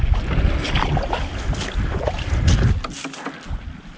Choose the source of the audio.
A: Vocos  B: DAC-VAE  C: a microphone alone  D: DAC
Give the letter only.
C